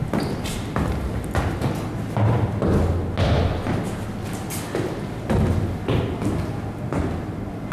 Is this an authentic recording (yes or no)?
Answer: yes